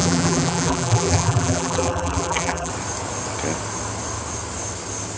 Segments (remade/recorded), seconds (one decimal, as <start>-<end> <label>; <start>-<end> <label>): 0.0-2.7 remade; 2.7-5.2 recorded